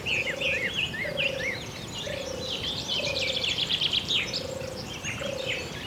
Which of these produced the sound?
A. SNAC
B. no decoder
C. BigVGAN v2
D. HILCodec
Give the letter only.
C